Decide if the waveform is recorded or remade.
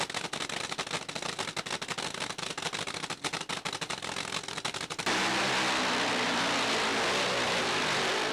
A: recorded